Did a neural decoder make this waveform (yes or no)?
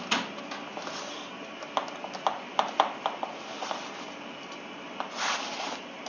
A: no